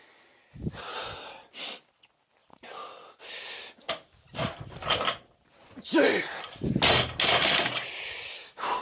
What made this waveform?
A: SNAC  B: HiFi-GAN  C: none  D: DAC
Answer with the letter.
C